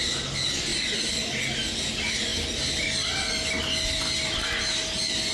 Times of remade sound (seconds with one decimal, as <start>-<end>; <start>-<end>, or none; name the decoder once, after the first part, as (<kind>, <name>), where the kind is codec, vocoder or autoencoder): none